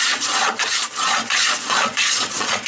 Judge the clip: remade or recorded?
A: remade